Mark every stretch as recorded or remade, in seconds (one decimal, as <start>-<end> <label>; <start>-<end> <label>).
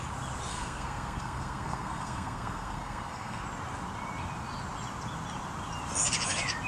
0.0-0.5 recorded; 0.5-3.4 remade; 3.4-6.7 recorded